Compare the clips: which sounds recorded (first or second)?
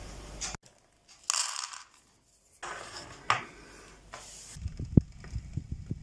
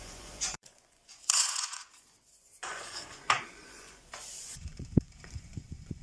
first